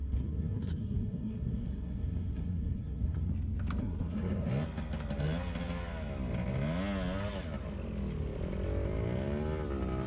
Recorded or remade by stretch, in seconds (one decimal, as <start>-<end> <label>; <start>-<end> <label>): 0.0-3.3 remade; 3.3-3.8 recorded; 3.8-4.5 remade; 4.5-10.1 recorded